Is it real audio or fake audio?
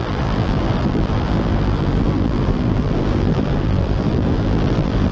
fake